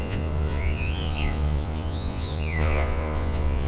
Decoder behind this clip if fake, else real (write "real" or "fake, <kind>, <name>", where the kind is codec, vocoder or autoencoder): fake, vocoder, Vocos